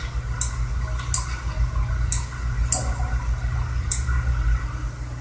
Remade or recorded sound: recorded